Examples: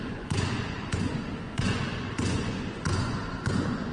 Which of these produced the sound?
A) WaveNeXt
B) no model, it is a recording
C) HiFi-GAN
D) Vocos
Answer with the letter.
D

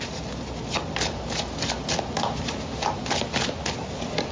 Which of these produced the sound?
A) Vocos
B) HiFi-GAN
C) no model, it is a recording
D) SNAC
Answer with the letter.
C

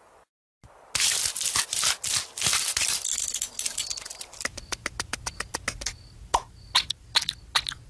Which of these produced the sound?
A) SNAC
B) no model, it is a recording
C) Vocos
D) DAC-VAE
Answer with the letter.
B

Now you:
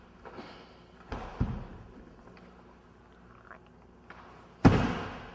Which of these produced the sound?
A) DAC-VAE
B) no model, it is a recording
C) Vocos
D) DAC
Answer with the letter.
B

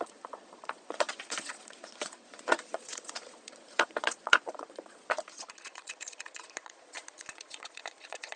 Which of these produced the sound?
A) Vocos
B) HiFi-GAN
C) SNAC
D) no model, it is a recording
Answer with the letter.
A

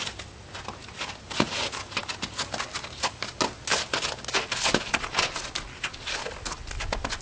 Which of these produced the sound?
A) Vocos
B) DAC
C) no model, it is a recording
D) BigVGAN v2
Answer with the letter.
C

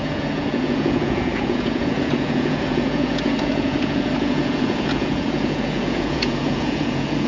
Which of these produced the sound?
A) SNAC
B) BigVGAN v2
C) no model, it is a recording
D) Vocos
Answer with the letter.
D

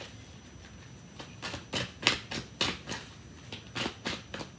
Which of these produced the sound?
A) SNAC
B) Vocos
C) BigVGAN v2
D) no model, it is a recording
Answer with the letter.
D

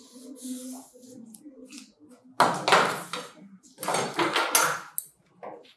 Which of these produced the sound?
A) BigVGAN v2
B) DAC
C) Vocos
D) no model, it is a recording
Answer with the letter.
D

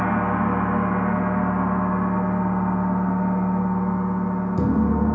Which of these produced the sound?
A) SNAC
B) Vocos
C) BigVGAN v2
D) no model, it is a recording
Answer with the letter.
D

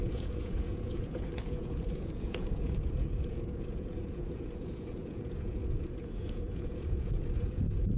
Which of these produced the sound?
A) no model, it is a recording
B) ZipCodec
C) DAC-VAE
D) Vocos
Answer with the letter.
D